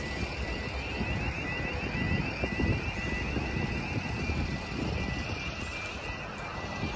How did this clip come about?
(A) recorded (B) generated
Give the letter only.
A